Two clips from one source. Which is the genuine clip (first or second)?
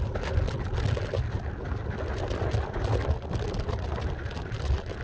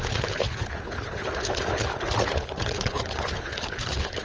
first